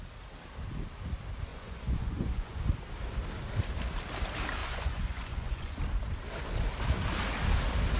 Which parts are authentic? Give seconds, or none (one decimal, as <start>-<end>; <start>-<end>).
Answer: 0.0-1.5; 2.6-4.6; 5.8-8.0